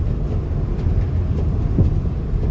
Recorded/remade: recorded